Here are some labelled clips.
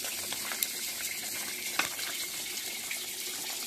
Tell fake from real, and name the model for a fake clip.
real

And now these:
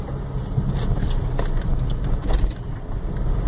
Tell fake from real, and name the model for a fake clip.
real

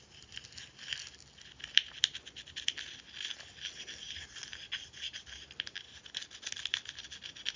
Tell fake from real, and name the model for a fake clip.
real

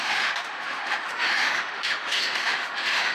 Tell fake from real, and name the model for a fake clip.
fake, autoencoder, DAC-VAE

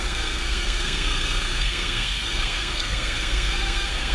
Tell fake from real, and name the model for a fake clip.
fake, codec, SNAC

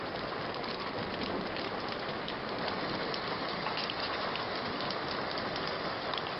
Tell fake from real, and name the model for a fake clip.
real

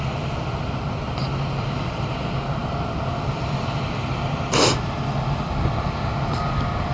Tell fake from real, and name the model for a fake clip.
real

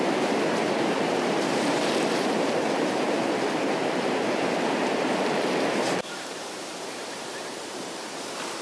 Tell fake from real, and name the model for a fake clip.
fake, vocoder, BigVGAN v2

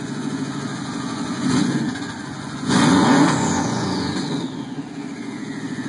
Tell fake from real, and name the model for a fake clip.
fake, vocoder, Vocos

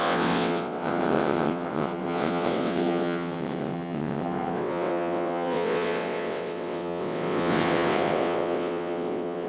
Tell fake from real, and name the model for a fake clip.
fake, vocoder, WaveNeXt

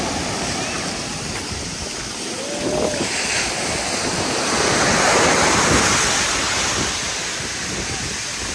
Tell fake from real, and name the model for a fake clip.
real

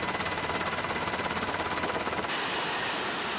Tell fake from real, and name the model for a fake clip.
real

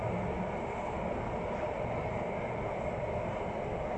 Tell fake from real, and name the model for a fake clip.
real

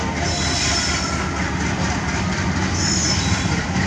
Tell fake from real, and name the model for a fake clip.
fake, vocoder, BigVGAN v2